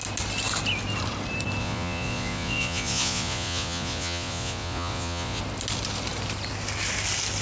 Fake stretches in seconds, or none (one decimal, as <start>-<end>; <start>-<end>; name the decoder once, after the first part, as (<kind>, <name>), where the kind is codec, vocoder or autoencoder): 1.6-5.4 (vocoder, Vocos)